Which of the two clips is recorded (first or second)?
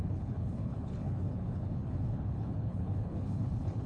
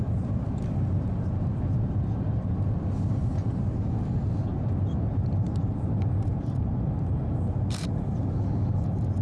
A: second